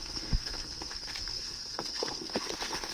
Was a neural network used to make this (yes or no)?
yes